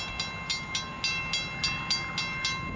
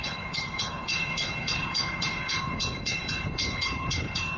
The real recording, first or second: first